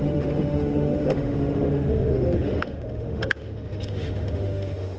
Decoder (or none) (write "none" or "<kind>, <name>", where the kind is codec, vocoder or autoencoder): autoencoder, DAC-VAE